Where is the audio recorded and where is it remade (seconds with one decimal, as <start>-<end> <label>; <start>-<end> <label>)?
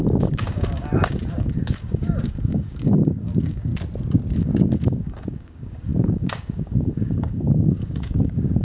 0.0-3.7 remade; 3.7-4.4 recorded; 4.4-8.6 remade